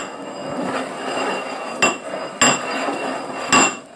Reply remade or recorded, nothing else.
recorded